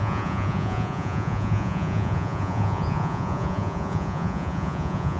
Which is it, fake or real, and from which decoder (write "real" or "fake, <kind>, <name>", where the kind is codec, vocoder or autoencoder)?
fake, vocoder, Vocos